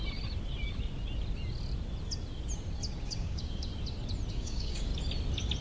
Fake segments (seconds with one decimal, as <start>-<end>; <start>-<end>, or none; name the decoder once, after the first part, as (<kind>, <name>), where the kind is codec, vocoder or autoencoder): 3.1-3.7 (codec, DAC); 4.3-4.9